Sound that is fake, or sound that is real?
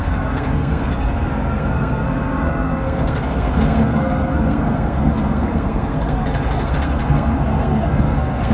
fake